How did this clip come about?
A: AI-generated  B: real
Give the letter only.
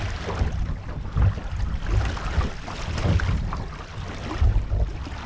B